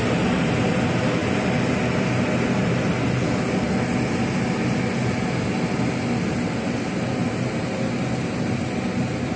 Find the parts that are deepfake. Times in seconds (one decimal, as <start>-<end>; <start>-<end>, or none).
none